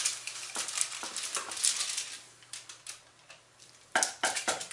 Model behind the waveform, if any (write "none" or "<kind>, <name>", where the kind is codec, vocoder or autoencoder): none